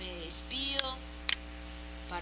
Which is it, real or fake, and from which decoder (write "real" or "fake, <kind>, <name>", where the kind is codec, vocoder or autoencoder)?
real